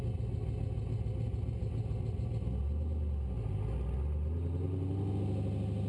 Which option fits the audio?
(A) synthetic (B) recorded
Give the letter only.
B